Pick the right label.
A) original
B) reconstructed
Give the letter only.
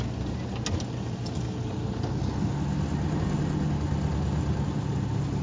A